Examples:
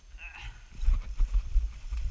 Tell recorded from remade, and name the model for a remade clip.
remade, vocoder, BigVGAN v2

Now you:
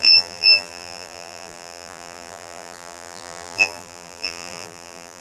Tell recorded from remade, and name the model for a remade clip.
remade, vocoder, BigVGAN v2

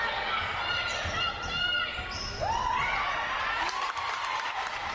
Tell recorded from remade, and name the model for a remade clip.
recorded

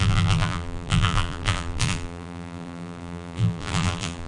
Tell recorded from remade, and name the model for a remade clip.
remade, vocoder, BigVGAN v2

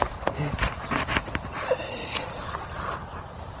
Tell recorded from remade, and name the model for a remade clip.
remade, vocoder, BigVGAN v2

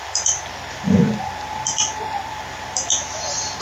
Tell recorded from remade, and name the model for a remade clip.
remade, vocoder, BigVGAN v2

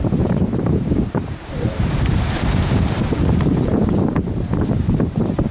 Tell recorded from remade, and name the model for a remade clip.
remade, vocoder, BigVGAN v2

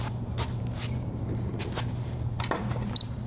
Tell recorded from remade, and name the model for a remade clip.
remade, vocoder, BigVGAN v2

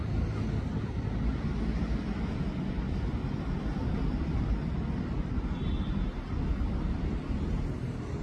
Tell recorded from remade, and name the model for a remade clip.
recorded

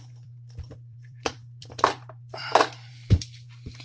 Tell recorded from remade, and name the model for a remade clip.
remade, vocoder, BigVGAN v2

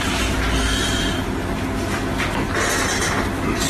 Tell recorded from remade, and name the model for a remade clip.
recorded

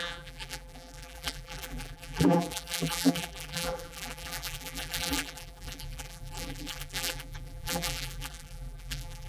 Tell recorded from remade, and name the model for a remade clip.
remade, vocoder, BigVGAN v2